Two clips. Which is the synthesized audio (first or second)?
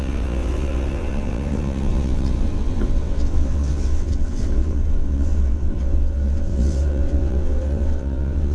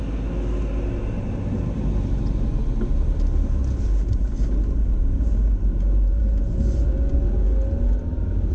first